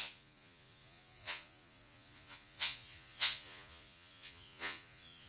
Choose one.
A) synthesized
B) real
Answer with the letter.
A